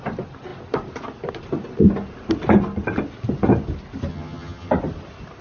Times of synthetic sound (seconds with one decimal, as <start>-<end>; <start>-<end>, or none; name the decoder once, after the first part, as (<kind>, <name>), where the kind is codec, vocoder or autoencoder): 4.1-4.7 (vocoder, HiFi-GAN)